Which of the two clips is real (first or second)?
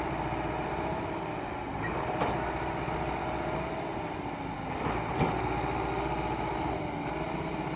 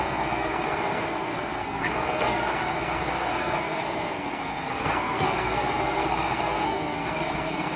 first